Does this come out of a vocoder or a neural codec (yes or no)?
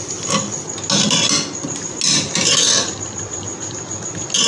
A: no